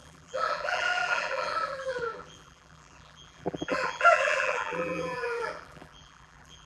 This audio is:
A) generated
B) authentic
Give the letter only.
A